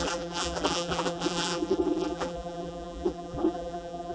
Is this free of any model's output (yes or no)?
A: no